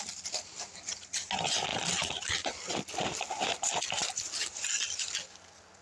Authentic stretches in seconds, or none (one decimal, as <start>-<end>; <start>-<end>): 0.0-1.7; 3.2-5.8